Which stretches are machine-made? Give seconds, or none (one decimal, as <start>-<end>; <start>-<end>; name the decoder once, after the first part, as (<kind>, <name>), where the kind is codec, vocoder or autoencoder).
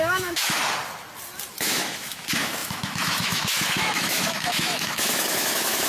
0.0-0.6 (autoencoder, DAC-VAE); 1.6-5.9